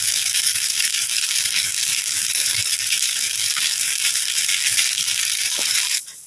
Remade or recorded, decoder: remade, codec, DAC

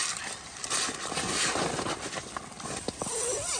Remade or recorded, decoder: recorded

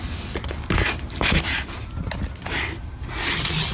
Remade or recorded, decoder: recorded